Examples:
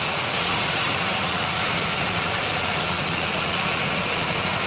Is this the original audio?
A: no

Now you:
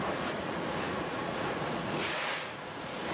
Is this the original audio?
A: no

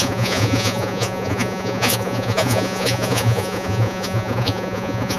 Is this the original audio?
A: no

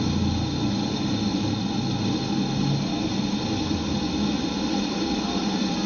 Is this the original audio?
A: yes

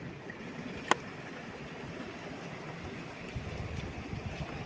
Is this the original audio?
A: yes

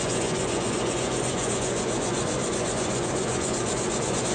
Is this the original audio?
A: no